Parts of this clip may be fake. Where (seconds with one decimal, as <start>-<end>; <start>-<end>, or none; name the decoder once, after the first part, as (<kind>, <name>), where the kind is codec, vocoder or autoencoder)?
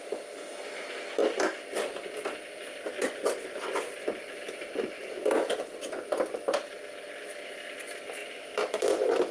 none